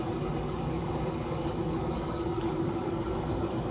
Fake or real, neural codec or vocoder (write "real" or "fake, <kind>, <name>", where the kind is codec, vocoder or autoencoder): fake, codec, DAC